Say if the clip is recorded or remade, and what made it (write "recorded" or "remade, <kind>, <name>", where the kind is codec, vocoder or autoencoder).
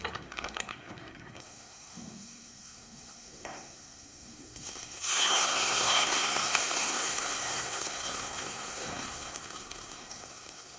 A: remade, codec, SNAC